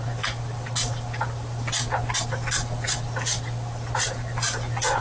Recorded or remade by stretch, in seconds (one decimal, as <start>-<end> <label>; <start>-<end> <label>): 0.0-5.0 recorded

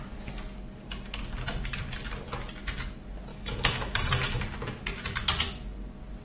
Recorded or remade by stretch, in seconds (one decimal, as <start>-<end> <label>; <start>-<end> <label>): 0.0-3.3 recorded; 3.3-4.4 remade; 4.4-6.2 recorded

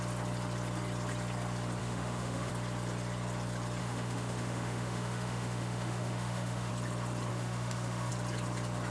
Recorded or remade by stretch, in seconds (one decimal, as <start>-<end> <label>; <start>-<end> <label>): 0.0-1.8 recorded; 1.8-2.5 remade; 2.5-3.8 recorded; 3.8-6.7 remade; 6.7-7.3 recorded; 7.3-8.1 remade; 8.1-8.9 recorded

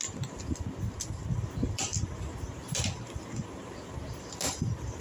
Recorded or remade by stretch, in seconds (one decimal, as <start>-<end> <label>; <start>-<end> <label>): 0.0-1.2 recorded; 1.2-1.8 remade; 1.8-2.6 recorded; 2.6-4.2 remade; 4.2-5.0 recorded